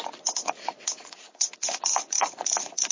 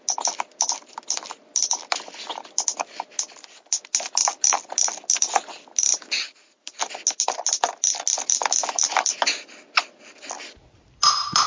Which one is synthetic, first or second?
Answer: first